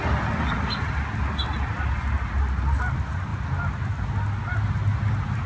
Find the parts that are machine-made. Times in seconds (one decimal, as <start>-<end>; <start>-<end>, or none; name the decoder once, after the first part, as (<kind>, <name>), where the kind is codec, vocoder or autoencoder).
none